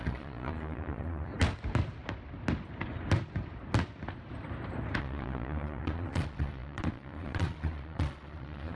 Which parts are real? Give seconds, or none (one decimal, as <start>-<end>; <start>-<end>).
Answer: 1.3-5.0